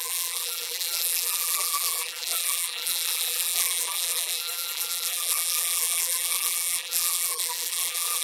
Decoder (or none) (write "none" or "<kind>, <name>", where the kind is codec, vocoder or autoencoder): vocoder, BigVGAN v2